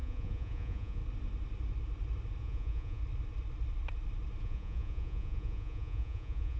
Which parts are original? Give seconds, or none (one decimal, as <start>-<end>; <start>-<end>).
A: 1.0-2.4; 3.0-4.4